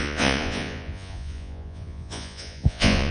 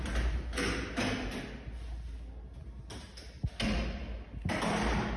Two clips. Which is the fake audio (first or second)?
first